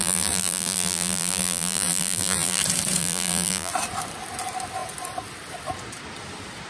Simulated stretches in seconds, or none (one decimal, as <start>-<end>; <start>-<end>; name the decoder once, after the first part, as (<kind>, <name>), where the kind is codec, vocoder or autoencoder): 0.0-2.6 (vocoder, BigVGAN v2); 3.0-3.7